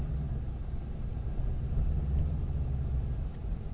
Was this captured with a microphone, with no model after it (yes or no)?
no